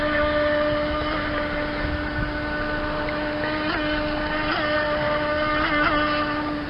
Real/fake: real